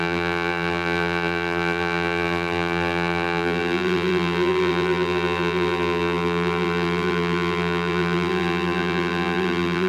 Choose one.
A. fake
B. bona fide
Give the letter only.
A